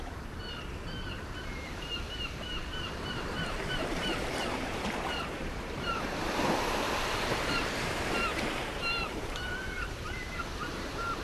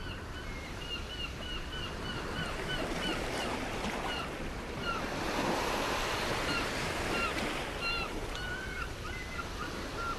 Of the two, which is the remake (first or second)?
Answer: first